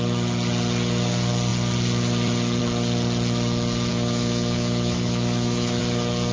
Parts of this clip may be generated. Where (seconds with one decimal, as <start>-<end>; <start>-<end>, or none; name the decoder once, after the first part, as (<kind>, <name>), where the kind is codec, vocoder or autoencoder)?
3.9-5.8 (autoencoder, DAC-VAE)